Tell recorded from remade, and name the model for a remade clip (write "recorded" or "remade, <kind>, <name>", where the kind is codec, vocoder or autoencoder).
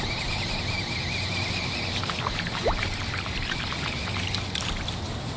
recorded